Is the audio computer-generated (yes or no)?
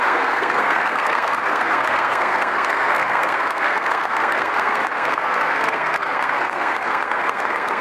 yes